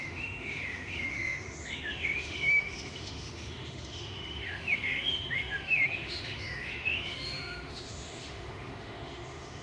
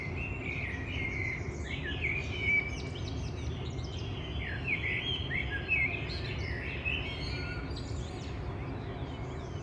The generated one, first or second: first